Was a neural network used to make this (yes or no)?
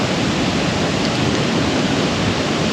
no